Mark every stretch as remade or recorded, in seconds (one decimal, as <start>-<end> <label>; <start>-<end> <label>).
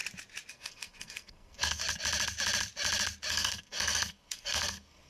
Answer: 0.0-0.5 recorded; 0.5-1.8 remade; 1.8-3.3 recorded; 3.3-5.1 remade